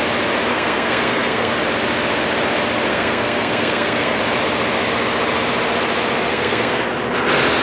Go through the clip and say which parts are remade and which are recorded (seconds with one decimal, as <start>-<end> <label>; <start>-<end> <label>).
0.0-0.5 recorded; 0.5-1.5 remade; 1.5-2.9 recorded; 2.9-4.2 remade; 4.2-6.3 recorded; 6.3-6.8 remade; 6.8-7.6 recorded